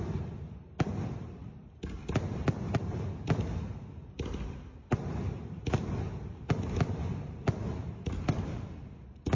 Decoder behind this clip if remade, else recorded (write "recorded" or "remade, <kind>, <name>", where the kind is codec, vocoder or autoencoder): recorded